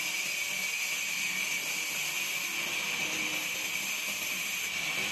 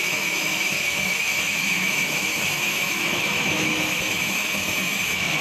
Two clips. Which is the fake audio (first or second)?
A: second